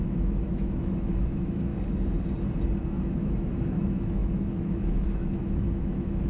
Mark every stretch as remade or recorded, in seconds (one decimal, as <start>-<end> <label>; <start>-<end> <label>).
0.0-1.7 remade; 1.7-2.9 recorded; 2.9-6.3 remade

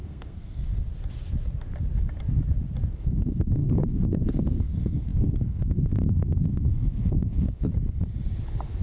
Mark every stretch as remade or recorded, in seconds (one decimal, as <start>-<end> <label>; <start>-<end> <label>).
0.0-0.7 remade; 0.7-3.0 recorded; 3.0-7.7 remade; 7.7-8.8 recorded

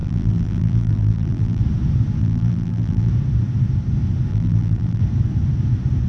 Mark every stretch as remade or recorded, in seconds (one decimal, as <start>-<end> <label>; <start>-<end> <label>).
0.0-1.6 remade; 1.6-2.2 recorded; 2.2-3.1 remade; 3.1-4.3 recorded; 4.3-5.0 remade; 5.0-6.1 recorded

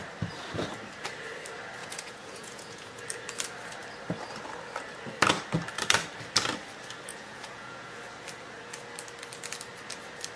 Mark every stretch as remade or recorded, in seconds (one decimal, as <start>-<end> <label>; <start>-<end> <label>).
0.0-1.8 recorded; 1.8-3.0 remade; 3.0-7.1 recorded; 7.1-8.0 remade; 8.0-10.4 recorded